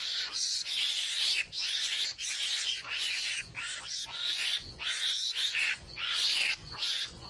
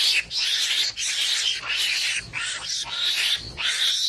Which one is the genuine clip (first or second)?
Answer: second